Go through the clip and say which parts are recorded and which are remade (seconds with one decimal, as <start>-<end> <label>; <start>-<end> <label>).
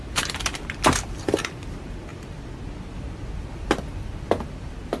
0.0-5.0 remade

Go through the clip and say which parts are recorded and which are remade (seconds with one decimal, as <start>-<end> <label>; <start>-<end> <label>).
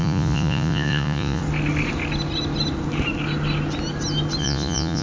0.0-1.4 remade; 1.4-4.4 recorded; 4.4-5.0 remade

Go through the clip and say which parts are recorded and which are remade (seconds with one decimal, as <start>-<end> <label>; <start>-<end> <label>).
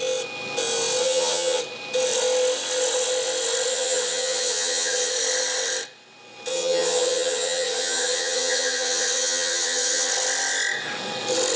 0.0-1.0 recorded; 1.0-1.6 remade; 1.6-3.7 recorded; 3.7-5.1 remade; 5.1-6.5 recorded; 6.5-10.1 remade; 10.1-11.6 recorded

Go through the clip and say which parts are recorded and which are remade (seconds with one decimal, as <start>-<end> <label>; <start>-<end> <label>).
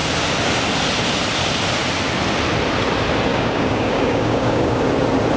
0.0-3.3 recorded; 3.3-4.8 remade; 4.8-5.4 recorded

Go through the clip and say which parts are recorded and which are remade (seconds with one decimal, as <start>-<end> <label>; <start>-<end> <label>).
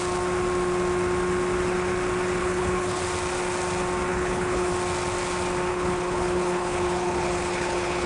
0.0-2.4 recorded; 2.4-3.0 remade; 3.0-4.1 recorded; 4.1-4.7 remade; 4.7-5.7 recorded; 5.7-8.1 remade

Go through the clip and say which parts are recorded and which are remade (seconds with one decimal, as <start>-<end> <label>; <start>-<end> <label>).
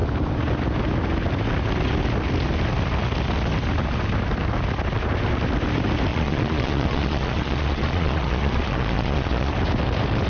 0.0-6.1 recorded; 6.1-9.5 remade; 9.5-10.3 recorded